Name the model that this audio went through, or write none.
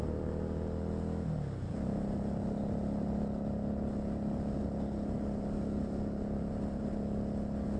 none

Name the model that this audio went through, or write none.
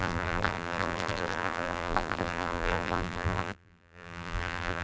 vocoder, BigVGAN v2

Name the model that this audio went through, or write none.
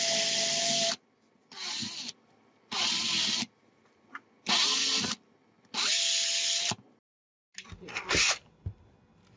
none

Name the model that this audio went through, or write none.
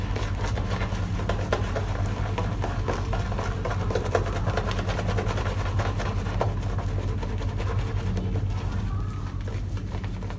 none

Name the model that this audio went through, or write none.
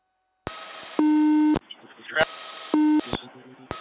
none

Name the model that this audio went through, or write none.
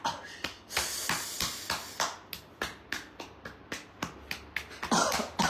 none